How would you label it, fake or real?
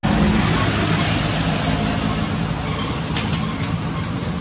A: real